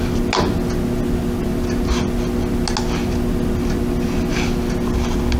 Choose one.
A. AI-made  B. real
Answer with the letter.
B